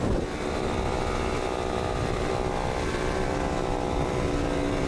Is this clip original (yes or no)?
no